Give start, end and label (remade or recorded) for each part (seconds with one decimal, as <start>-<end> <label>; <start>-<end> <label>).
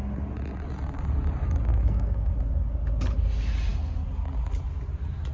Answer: 0.0-1.7 recorded; 1.7-2.3 remade; 2.3-5.3 recorded